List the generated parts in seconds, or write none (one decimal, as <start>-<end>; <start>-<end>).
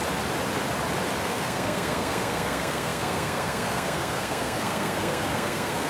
1.2-5.9